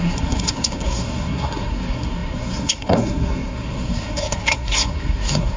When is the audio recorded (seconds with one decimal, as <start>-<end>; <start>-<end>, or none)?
none